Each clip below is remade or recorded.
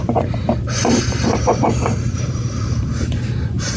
remade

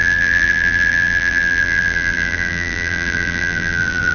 remade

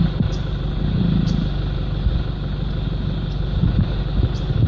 remade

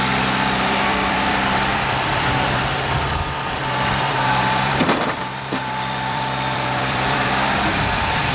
remade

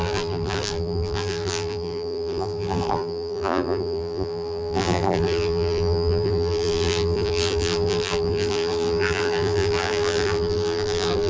remade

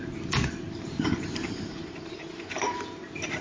remade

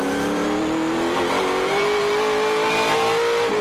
recorded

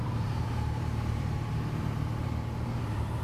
remade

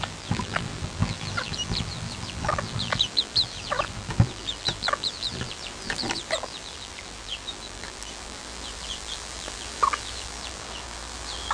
remade